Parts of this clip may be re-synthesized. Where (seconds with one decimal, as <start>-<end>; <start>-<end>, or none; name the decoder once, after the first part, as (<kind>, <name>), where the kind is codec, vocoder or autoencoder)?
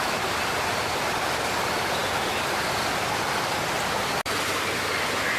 none